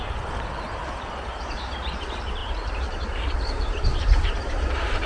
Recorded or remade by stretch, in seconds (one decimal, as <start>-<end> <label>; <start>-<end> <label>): 0.0-2.4 recorded; 2.4-5.1 remade